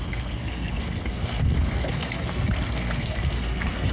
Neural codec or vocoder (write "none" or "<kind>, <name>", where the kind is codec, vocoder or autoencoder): codec, SNAC